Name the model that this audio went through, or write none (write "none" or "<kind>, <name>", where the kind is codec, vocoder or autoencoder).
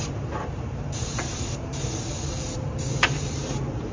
vocoder, BigVGAN v2